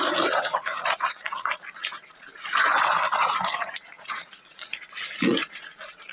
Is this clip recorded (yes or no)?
no